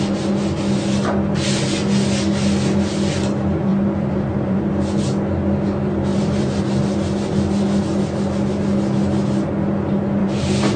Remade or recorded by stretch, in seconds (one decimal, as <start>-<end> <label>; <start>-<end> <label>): 0.0-3.7 recorded; 3.7-4.7 remade; 4.7-6.1 recorded; 6.1-6.6 remade; 6.6-10.2 recorded; 10.2-10.8 remade